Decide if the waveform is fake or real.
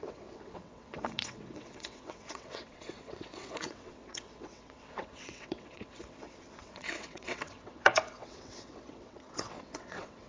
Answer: fake